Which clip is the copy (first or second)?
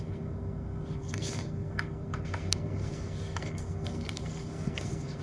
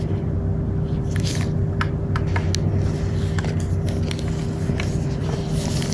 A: first